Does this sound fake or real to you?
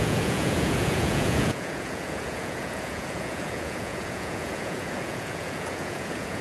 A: fake